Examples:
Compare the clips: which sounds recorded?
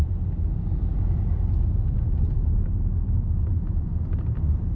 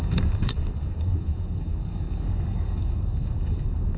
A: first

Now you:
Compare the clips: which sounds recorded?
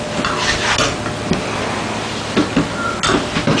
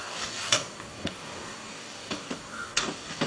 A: first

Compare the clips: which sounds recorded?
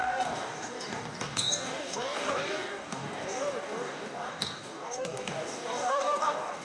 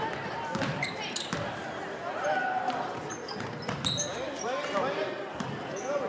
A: second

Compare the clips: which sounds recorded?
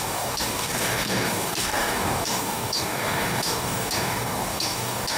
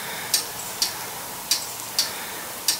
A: second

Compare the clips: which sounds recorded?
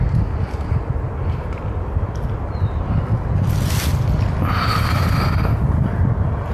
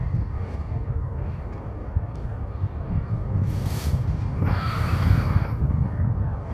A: first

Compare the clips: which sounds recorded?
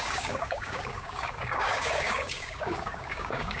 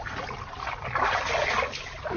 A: second